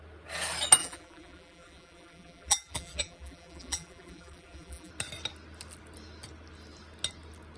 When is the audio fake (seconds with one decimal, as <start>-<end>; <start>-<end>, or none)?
0.8-4.9